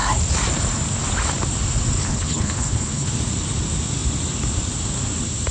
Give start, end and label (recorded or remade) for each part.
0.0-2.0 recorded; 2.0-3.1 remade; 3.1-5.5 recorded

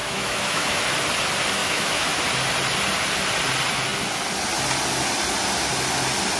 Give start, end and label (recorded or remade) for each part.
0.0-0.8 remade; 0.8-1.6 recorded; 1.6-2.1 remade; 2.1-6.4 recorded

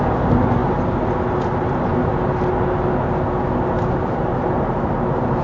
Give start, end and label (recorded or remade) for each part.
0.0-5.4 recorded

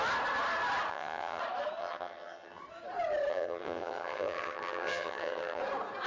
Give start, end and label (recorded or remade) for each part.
0.0-0.9 recorded; 0.9-1.4 remade; 1.4-1.8 recorded; 1.8-2.6 remade; 2.6-3.3 recorded; 3.3-5.6 remade; 5.6-6.1 recorded